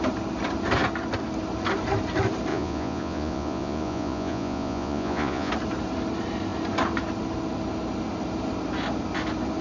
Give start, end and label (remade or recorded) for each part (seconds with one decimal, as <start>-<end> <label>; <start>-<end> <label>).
0.0-2.5 recorded; 2.5-5.5 remade; 5.5-9.6 recorded